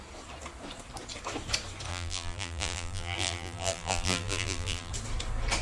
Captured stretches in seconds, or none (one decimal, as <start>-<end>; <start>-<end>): 0.0-1.9; 4.9-5.6